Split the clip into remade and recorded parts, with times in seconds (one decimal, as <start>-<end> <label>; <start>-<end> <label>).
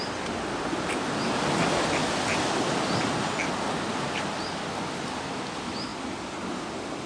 0.0-7.1 recorded